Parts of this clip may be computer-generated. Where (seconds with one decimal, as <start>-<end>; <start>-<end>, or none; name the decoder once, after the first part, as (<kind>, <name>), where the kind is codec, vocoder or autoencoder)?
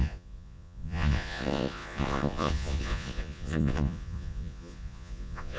0.0-5.6 (vocoder, Vocos)